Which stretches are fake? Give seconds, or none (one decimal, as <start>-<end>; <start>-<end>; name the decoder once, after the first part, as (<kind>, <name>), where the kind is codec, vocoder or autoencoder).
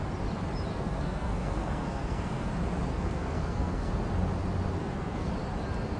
0.7-2.5 (codec, SNAC); 2.9-3.9; 4.8-5.3